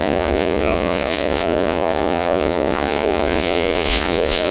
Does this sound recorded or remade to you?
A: remade